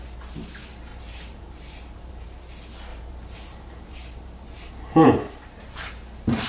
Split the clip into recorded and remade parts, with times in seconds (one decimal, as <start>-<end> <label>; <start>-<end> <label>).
0.0-0.9 recorded; 0.9-2.4 remade; 2.4-2.9 recorded; 2.9-5.9 remade; 5.9-6.5 recorded